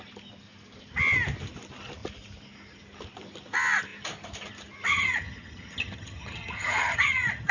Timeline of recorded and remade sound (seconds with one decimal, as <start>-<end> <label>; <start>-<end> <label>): 0.0-4.9 recorded; 4.9-7.5 remade